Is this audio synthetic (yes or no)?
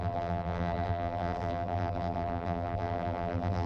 yes